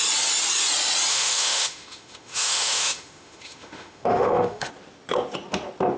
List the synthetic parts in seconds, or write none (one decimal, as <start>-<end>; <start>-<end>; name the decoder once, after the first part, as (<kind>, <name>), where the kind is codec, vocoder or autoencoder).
1.1-4.7 (autoencoder, DAC-VAE)